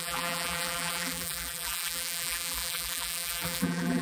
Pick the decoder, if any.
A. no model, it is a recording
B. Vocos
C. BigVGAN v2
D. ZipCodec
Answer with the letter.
C